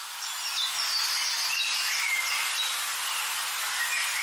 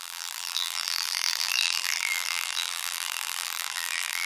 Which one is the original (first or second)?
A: first